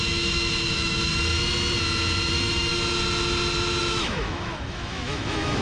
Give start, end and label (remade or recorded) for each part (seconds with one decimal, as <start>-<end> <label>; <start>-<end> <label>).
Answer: 0.0-1.1 remade; 1.1-2.3 recorded; 2.3-2.7 remade; 2.7-3.8 recorded; 3.8-5.6 remade